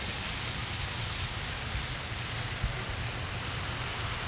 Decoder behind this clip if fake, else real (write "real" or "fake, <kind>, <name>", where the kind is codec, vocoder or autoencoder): real